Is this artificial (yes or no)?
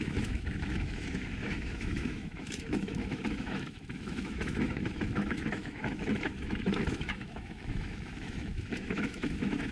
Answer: yes